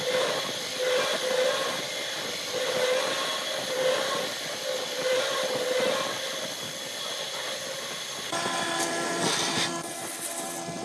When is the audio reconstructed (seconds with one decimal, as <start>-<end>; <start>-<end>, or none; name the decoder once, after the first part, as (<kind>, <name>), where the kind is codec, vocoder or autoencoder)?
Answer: 0.0-10.8 (vocoder, BigVGAN v2)